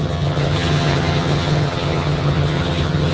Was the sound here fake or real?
fake